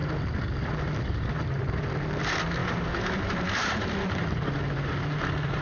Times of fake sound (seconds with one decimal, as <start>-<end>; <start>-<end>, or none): 0.0-5.6